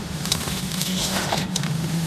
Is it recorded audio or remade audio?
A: remade